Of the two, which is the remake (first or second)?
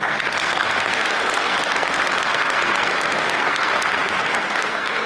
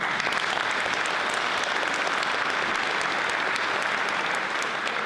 first